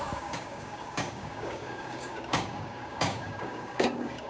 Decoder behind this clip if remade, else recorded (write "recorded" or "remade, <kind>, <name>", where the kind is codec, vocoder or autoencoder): remade, codec, DAC